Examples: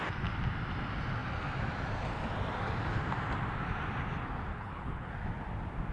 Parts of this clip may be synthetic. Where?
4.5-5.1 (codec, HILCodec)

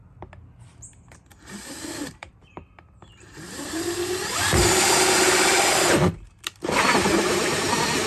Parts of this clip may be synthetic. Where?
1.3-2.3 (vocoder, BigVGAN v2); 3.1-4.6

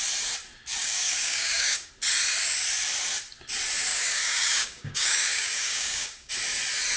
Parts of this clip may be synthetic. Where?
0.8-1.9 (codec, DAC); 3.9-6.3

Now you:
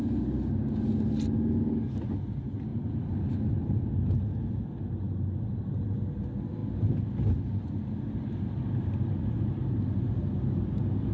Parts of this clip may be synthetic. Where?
2.7-3.9 (vocoder, BigVGAN v2)

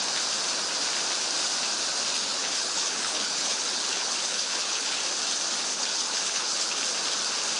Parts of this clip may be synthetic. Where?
2.2-5.0 (codec, HILCodec); 5.7-6.7